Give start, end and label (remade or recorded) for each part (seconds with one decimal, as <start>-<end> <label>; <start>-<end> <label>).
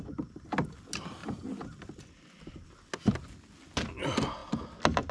0.0-5.1 recorded